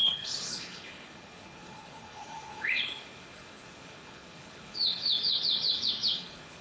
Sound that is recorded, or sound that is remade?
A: remade